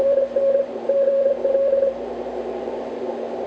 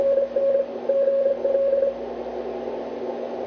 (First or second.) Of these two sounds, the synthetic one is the first